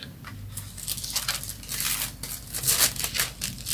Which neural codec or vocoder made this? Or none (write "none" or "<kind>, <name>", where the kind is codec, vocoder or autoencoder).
none